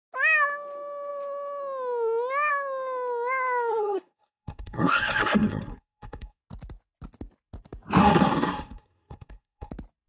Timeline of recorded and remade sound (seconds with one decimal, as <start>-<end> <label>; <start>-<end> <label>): 0.0-3.7 recorded; 3.7-6.4 remade; 6.4-8.0 recorded; 8.0-9.7 remade; 9.7-10.1 recorded